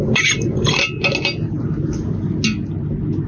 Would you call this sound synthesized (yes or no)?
no